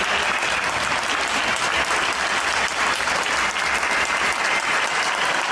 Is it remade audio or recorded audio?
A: recorded